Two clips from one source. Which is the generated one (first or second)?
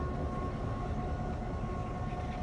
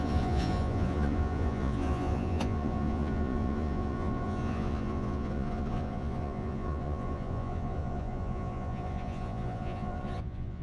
second